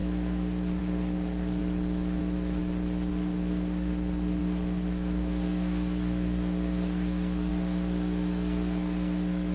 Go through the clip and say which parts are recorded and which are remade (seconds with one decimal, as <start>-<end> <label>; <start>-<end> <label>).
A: 0.0-1.6 remade; 1.6-2.2 recorded; 2.2-2.6 remade; 2.6-3.1 recorded; 3.1-9.5 remade